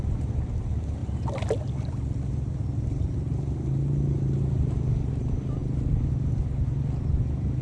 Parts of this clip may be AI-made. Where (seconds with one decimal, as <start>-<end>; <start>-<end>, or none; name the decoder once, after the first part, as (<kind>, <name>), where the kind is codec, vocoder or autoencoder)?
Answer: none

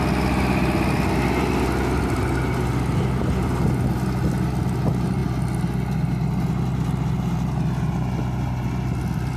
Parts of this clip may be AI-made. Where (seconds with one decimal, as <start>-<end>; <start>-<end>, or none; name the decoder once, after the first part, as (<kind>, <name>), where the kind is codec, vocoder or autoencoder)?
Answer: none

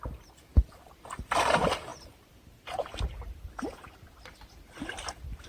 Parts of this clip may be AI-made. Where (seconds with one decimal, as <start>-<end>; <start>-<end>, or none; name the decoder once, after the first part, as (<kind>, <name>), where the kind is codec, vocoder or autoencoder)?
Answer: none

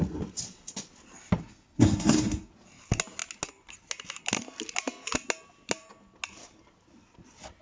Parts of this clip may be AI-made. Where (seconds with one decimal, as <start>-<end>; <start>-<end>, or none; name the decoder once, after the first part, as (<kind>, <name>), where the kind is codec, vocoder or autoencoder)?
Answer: 1.4-2.5 (codec, SNAC)

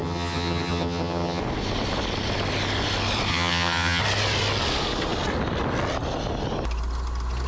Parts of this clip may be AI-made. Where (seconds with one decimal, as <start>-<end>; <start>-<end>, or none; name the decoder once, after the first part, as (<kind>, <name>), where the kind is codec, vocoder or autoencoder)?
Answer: 0.0-1.4 (vocoder, HiFi-GAN); 3.3-4.0

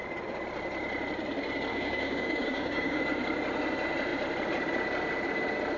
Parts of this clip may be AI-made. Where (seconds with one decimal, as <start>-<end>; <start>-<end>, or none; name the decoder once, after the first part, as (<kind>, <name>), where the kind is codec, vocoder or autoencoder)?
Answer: 1.7-3.0 (codec, DAC)

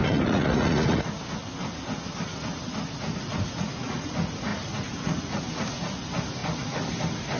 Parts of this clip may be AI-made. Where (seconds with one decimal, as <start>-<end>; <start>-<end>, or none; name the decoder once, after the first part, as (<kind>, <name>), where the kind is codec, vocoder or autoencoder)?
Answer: 0.0-1.1 (vocoder, Vocos); 3.3-4.1; 4.5-5.4